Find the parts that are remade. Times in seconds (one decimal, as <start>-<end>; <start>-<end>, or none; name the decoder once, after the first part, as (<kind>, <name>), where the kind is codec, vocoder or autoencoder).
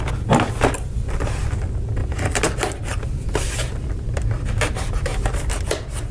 2.0-4.5 (vocoder, BigVGAN v2); 5.1-6.1